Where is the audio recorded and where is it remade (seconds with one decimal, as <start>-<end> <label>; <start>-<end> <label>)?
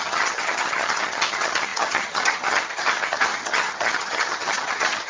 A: 0.0-5.1 remade